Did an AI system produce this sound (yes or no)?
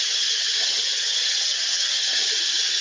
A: yes